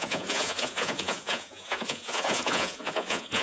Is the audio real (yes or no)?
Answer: no